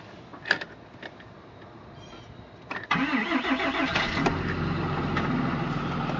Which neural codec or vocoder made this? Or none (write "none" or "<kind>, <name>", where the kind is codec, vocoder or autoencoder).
none